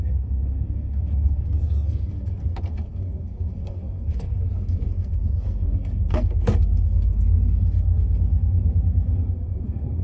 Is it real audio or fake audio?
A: fake